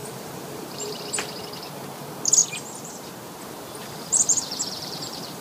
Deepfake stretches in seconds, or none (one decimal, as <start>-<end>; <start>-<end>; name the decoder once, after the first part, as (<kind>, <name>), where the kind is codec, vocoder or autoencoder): 0.0-1.0 (vocoder, BigVGAN v2); 2.4-3.4; 3.8-5.4